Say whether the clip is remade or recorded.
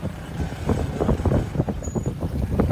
recorded